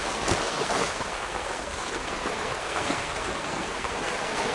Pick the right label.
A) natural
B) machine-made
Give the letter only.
B